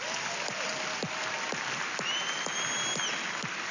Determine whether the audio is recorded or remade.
recorded